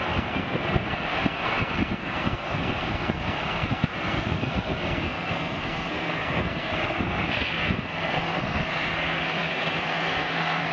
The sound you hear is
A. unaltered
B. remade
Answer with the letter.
B